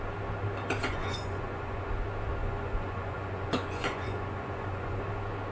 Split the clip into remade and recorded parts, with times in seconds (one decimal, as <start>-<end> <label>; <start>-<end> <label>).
0.0-0.8 recorded; 0.8-1.9 remade; 1.9-2.4 recorded; 2.4-5.0 remade; 5.0-5.5 recorded